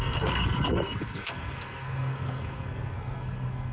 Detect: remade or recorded remade